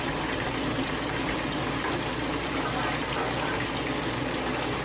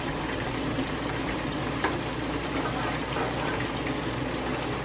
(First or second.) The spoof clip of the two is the second